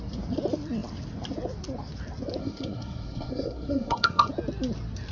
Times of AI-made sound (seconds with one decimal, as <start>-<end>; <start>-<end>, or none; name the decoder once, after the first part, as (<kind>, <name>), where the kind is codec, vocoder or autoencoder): 2.4-4.3 (codec, SNAC)